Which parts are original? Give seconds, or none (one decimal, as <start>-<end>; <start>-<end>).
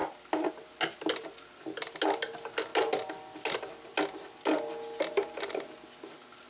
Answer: 0.0-6.5